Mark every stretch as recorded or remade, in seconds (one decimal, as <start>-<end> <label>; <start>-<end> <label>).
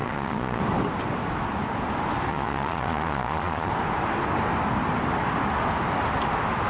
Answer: 0.0-0.6 remade; 0.6-2.3 recorded; 2.3-3.7 remade; 3.7-6.7 recorded